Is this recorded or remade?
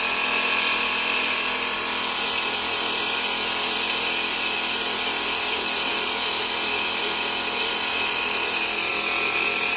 recorded